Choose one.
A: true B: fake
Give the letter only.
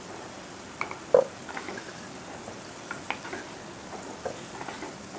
A